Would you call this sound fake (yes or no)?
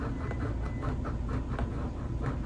no